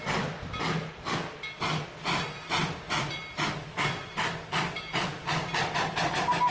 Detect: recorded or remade recorded